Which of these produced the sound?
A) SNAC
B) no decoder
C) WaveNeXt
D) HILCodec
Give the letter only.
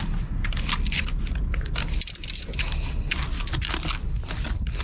B